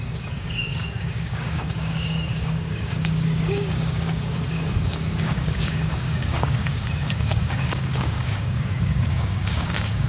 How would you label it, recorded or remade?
remade